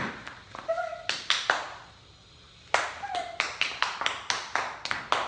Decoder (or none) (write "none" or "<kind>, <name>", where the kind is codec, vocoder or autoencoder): none